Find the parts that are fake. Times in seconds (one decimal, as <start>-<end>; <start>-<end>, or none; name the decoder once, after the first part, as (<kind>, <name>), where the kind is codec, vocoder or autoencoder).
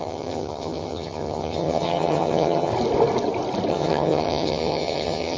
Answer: 0.0-2.7 (vocoder, HiFi-GAN); 3.7-5.4